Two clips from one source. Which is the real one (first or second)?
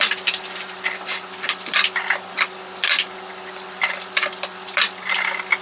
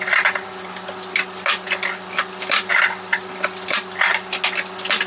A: second